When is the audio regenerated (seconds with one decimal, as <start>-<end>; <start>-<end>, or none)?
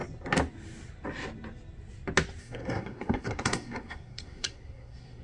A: 2.4-5.2